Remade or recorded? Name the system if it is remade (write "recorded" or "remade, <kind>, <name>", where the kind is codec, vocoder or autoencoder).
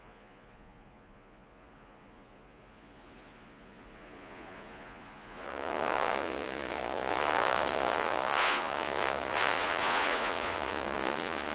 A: remade, vocoder, Vocos